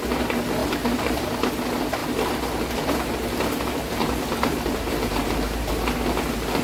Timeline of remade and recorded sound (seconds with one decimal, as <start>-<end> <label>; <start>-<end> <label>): 0.0-0.6 recorded; 0.6-1.5 remade; 1.5-2.0 recorded; 2.0-5.7 remade; 5.7-6.6 recorded